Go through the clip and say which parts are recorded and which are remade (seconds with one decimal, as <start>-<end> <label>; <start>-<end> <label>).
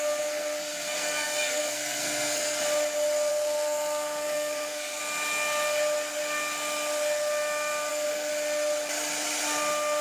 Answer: 0.0-2.6 remade; 2.6-3.3 recorded; 3.3-5.0 remade; 5.0-7.9 recorded; 7.9-8.3 remade; 8.3-10.0 recorded